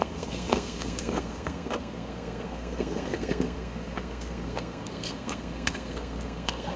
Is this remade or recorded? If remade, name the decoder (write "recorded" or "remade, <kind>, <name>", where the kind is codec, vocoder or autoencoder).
remade, codec, SNAC